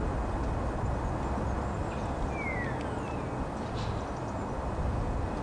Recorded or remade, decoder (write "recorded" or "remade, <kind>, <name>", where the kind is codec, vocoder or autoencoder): recorded